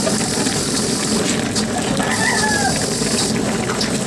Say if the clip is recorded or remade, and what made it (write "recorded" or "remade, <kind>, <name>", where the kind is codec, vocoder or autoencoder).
recorded